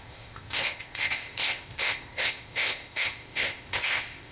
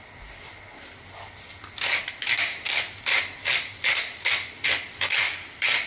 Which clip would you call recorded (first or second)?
second